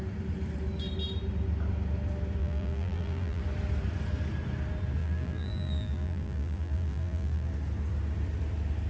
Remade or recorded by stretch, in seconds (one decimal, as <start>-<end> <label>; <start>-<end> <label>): 0.0-2.4 recorded; 2.4-3.4 remade; 3.4-5.0 recorded; 5.0-7.5 remade; 7.5-8.9 recorded